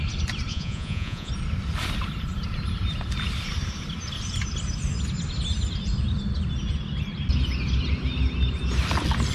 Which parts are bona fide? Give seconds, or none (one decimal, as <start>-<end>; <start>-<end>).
0.0-0.5; 1.3-9.3